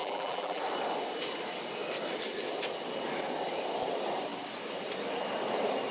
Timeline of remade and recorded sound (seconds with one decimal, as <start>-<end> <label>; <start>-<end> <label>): 0.0-0.6 remade; 0.6-5.9 recorded